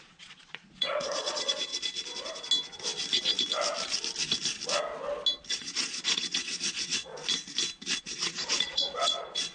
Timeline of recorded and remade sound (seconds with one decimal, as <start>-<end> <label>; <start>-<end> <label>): 0.0-1.7 remade; 1.7-5.5 recorded; 5.5-7.1 remade; 7.1-8.0 recorded; 8.0-9.5 remade